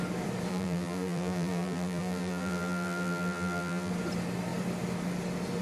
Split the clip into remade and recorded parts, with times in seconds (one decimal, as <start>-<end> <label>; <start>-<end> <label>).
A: 0.0-0.5 recorded; 0.5-3.9 remade; 3.9-5.6 recorded